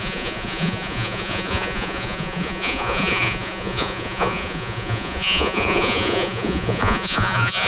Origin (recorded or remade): remade